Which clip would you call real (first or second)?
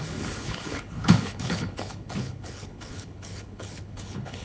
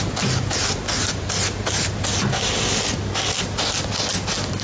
second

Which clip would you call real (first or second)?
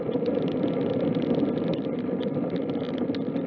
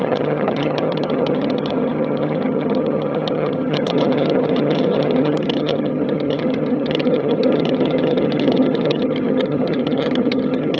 first